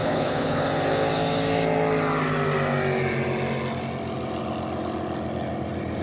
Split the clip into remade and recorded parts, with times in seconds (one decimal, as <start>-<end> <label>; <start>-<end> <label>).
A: 0.0-0.7 remade; 0.7-6.0 recorded